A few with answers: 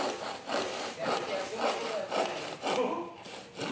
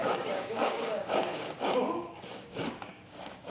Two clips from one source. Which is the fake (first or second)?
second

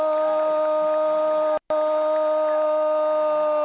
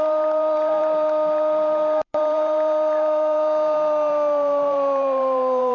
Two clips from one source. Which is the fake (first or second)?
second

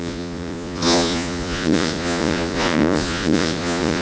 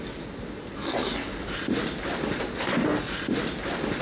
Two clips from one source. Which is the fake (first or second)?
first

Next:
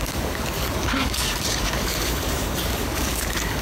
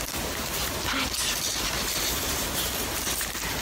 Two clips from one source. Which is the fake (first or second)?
first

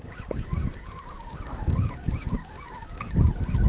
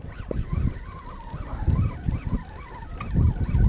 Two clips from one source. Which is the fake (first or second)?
first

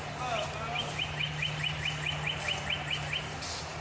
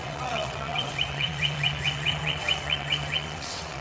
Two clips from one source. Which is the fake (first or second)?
second